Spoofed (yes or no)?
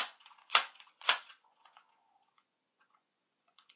yes